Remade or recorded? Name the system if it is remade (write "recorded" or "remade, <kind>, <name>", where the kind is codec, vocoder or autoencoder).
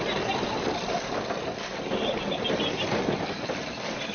recorded